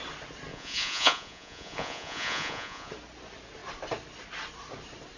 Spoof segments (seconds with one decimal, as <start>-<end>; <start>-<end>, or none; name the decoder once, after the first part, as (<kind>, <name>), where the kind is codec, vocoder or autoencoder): 0.5-2.9 (vocoder, Vocos)